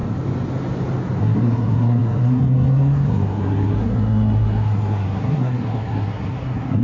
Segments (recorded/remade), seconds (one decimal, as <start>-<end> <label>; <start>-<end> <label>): 0.0-1.2 recorded; 1.2-6.8 remade